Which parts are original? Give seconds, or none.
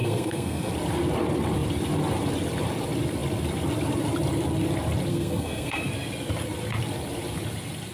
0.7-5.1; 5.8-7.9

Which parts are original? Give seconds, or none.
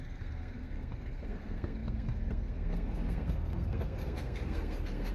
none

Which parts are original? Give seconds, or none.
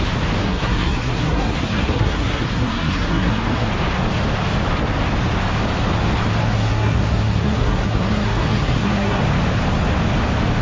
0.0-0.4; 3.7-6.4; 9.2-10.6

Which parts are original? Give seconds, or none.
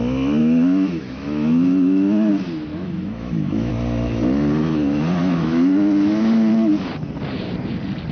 0.0-0.4; 2.3-2.7; 3.7-5.2; 6.7-8.1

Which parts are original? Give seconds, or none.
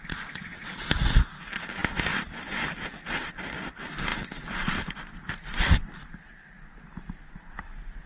0.0-8.1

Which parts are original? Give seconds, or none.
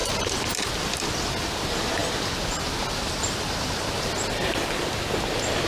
0.7-5.7